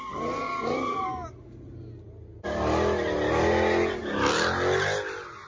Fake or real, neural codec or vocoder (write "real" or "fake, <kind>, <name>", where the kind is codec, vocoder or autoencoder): real